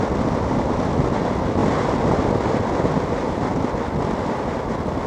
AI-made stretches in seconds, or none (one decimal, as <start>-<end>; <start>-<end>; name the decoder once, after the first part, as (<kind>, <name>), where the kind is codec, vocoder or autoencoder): none